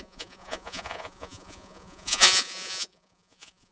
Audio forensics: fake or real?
fake